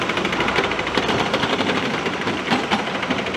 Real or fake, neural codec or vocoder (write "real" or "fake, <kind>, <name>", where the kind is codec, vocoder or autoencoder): fake, vocoder, BigVGAN v2